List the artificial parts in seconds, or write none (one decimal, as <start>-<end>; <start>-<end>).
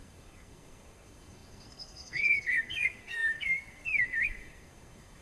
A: 0.0-5.2